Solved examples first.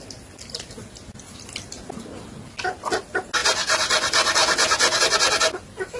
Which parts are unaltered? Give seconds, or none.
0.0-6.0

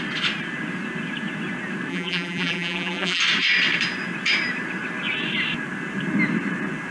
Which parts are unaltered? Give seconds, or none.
0.0-1.9; 3.2-6.9

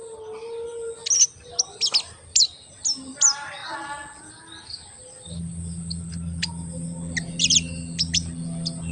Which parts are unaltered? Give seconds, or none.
0.0-8.9